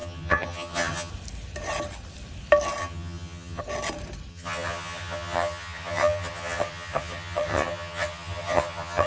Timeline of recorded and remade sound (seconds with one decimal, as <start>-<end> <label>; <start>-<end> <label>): 0.0-1.1 remade; 1.1-2.8 recorded; 2.8-3.6 remade; 3.6-4.3 recorded; 4.3-9.1 remade